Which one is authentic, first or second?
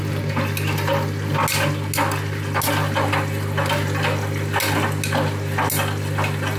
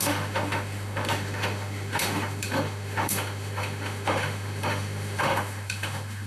first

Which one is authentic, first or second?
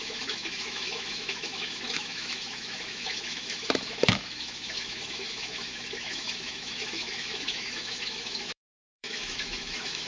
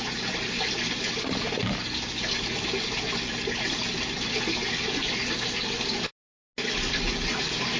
second